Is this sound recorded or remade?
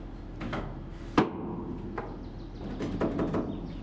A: recorded